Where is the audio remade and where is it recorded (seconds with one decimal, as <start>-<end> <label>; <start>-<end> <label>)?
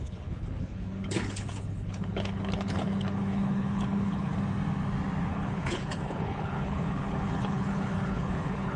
0.0-4.3 remade; 4.3-5.3 recorded; 5.3-8.8 remade